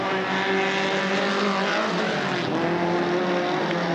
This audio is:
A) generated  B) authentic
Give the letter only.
B